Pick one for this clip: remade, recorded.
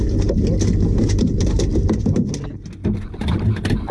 recorded